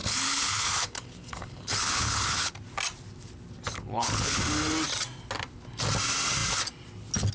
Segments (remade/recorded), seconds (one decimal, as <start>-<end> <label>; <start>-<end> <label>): 0.0-2.5 remade; 2.5-3.7 recorded; 3.7-4.4 remade; 4.4-7.3 recorded